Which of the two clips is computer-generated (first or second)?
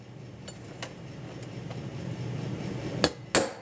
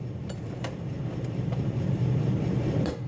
second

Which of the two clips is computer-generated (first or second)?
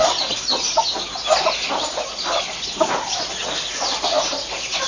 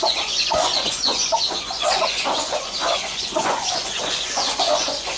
second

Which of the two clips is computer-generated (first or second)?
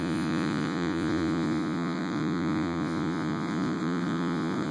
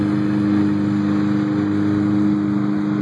first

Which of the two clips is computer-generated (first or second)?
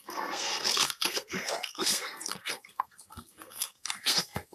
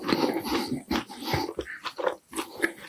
first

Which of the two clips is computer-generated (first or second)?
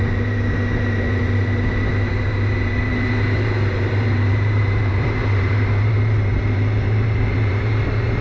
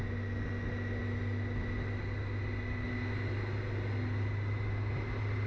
first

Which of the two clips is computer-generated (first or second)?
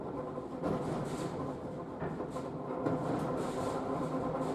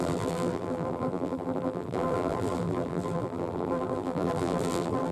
second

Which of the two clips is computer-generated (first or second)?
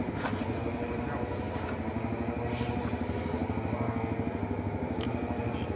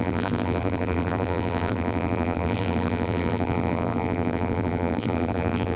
second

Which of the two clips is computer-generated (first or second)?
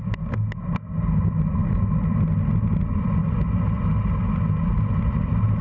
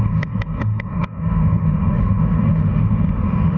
second